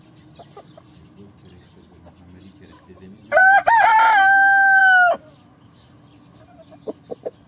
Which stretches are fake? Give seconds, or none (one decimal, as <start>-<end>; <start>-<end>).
3.4-4.0